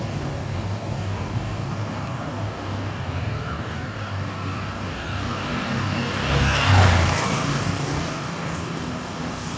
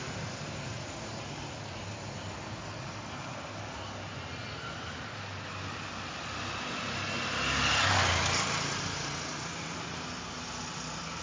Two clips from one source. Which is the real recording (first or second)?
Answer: second